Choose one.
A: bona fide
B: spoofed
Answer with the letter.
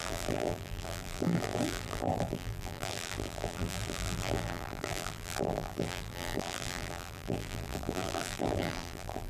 B